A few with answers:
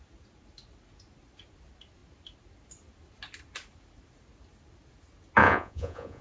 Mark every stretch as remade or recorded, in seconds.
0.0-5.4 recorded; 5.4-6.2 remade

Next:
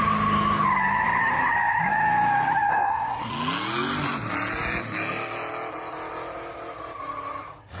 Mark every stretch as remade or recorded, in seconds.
0.0-2.7 recorded; 2.7-3.3 remade; 3.3-7.8 recorded